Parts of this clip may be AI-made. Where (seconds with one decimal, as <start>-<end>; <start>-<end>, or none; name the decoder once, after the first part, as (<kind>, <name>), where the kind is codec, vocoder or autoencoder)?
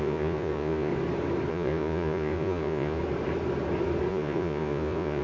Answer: 0.0-0.9 (vocoder, Vocos); 1.5-3.0; 4.1-5.2